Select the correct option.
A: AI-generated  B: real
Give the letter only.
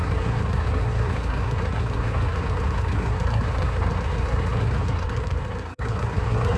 A